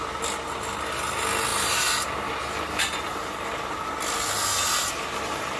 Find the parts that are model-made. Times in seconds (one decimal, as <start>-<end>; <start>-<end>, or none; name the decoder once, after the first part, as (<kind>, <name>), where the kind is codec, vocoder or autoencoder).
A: none